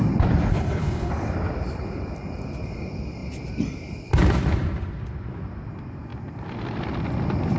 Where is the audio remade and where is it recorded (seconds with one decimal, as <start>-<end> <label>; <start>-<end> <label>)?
0.0-0.5 recorded; 0.5-1.1 remade; 1.1-7.6 recorded